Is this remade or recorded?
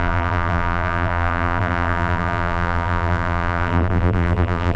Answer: remade